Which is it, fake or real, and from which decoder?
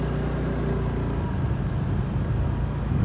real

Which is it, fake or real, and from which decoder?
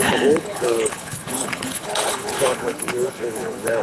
fake, codec, HILCodec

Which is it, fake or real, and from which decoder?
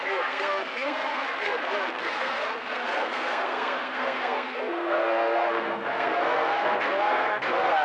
fake, codec, SNAC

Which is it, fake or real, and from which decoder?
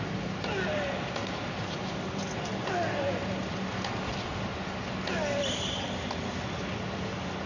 real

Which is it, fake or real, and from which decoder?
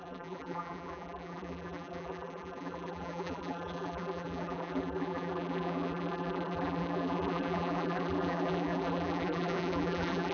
fake, vocoder, BigVGAN v2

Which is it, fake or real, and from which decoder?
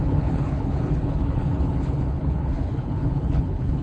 fake, codec, HILCodec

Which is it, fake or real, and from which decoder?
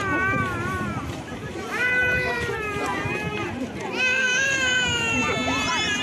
fake, vocoder, BigVGAN v2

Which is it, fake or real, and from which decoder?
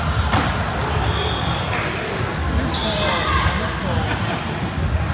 real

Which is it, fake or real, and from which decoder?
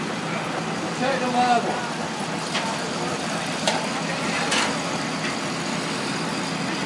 real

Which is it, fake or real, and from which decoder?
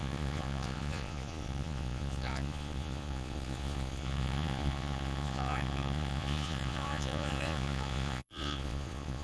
fake, vocoder, Vocos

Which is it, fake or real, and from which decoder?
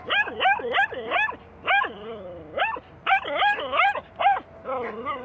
real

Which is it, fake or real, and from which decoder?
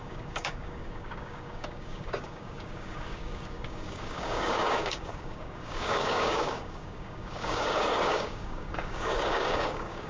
fake, codec, DAC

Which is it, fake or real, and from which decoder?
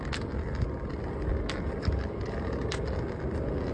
real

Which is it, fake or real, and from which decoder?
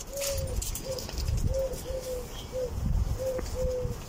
real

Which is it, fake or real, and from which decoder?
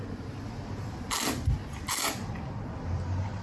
real